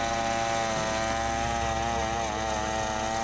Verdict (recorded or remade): recorded